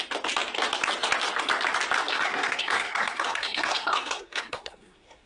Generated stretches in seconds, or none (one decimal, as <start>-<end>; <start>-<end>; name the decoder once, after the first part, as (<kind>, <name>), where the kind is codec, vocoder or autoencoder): 2.1-5.3 (codec, SNAC)